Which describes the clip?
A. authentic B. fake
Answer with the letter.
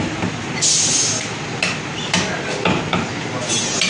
A